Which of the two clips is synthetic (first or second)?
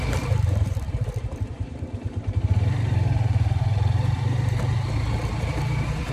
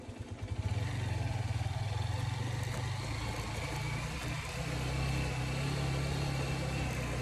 first